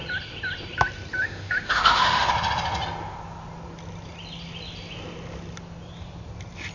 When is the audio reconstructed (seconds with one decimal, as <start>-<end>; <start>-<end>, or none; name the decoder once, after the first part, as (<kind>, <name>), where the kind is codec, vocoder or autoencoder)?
1.2-2.3 (autoencoder, DAC-VAE)